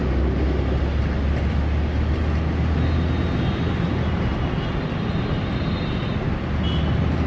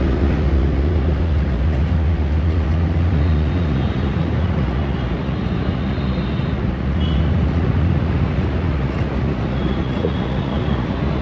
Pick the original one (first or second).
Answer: first